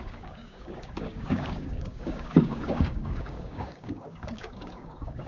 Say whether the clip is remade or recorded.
remade